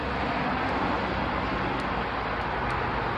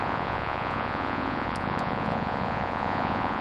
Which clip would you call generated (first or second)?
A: second